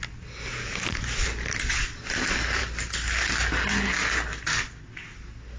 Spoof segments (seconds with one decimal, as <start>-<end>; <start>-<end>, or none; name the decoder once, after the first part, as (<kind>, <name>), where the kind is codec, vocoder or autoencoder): none